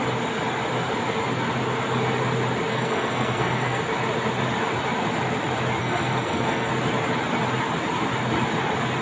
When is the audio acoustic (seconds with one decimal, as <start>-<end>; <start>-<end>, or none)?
0.0-2.7; 3.8-5.8; 6.7-9.0